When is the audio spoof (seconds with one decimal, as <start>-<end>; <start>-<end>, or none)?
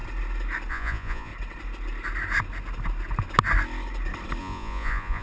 0.7-1.3; 4.4-5.2